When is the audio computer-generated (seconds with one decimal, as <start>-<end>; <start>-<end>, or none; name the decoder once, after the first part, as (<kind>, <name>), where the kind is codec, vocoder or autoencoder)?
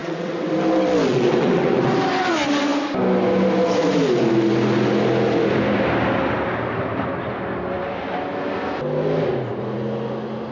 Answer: 0.0-0.5 (vocoder, WaveNeXt); 1.1-1.9